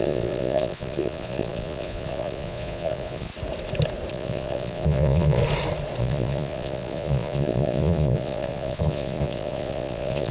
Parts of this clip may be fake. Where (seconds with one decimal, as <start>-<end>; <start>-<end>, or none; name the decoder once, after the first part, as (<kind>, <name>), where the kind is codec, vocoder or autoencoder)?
0.0-3.3 (vocoder, Vocos); 4.1-5.4; 6.0-10.3

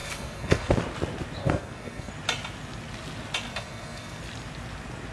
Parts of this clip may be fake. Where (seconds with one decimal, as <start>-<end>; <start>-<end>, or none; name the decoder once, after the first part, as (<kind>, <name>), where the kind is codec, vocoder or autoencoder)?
0.0-0.7 (codec, SNAC); 1.4-2.1; 3.5-4.2

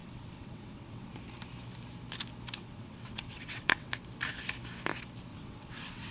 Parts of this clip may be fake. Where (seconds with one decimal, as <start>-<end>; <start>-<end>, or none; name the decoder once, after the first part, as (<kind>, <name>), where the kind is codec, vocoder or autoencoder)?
0.0-1.1 (vocoder, WaveNeXt); 2.6-3.9; 5.3-6.1

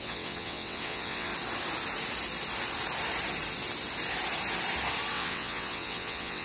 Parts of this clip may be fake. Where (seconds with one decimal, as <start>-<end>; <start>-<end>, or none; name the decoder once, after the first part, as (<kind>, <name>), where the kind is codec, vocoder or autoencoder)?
0.0-1.3 (vocoder, WaveNeXt); 5.1-6.4

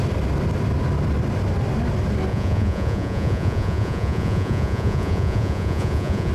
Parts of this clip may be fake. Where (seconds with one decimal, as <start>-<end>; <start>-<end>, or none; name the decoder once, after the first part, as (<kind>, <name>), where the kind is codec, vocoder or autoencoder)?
2.3-6.3 (vocoder, Vocos)

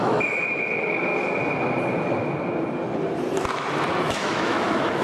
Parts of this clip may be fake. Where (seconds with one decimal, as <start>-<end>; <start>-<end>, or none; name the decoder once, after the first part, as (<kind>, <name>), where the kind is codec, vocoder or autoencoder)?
0.0-1.1 (autoencoder, DAC-VAE); 4.1-5.0

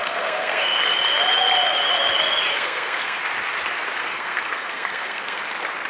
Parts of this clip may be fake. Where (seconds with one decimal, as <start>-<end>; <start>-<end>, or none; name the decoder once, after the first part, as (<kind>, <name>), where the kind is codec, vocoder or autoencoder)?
0.0-0.8 (codec, SNAC); 2.5-3.2; 4.0-5.4

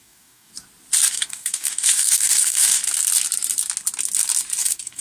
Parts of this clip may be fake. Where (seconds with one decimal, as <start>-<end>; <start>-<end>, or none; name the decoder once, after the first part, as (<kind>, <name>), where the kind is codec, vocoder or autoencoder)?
0.0-0.5 (codec, DAC); 1.1-2.8; 4.6-5.0